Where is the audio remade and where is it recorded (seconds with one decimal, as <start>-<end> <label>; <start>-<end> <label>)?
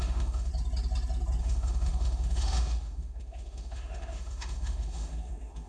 0.0-0.5 remade; 0.5-1.4 recorded; 1.4-5.7 remade